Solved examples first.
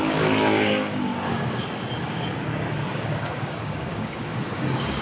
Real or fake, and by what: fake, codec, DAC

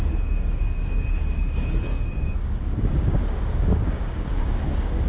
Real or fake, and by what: fake, codec, DAC